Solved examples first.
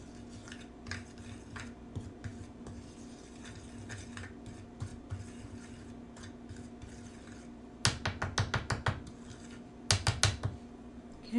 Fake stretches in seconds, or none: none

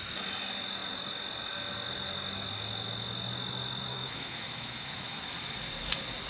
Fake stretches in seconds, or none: 3.9-5.2

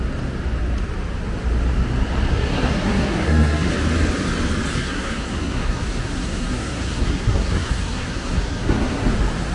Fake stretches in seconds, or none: 2.3-3.7; 4.7-9.1

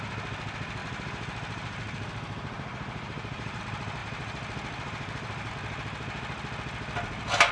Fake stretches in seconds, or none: 0.8-3.6; 4.0-5.5

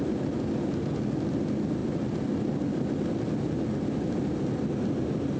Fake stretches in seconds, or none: none